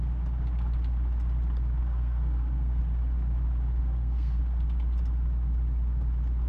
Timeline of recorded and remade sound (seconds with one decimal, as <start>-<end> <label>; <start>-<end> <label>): 0.0-1.8 recorded; 1.8-2.8 remade; 2.8-3.8 recorded; 3.8-4.4 remade; 4.4-6.5 recorded